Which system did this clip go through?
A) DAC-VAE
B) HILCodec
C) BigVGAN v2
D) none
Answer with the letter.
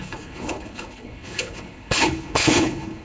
B